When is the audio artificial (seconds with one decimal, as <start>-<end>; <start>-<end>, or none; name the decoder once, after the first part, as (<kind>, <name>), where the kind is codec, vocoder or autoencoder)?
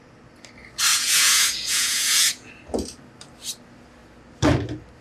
0.9-2.5 (vocoder, Vocos)